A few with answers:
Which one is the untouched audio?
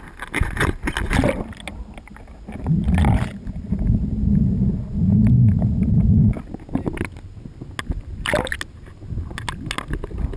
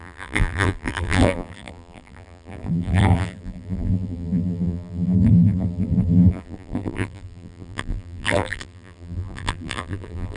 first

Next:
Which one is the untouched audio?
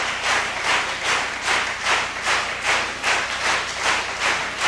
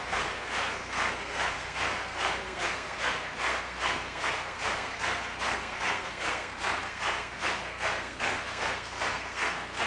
first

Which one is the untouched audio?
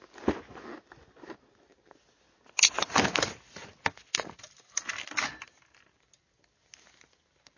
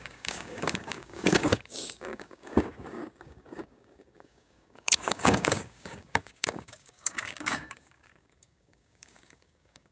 first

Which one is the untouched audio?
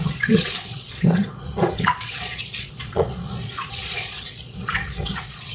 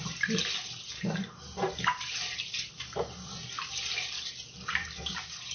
second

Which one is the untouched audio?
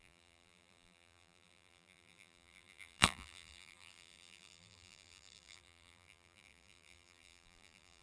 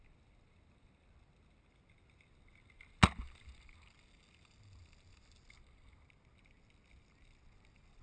second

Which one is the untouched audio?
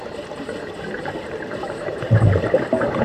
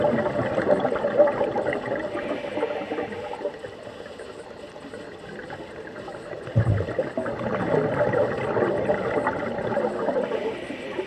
second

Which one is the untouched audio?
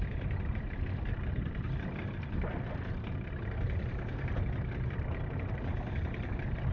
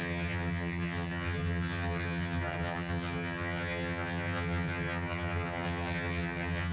first